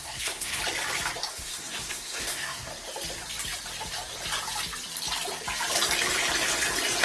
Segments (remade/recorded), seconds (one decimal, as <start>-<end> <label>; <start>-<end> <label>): 0.0-0.6 remade; 0.6-1.3 recorded; 1.3-2.7 remade; 2.7-7.0 recorded